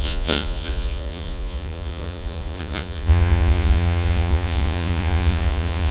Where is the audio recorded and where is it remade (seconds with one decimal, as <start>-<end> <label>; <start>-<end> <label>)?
0.0-5.9 remade